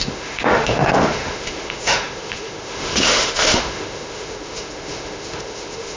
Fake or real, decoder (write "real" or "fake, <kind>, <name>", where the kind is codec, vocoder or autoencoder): fake, autoencoder, DAC-VAE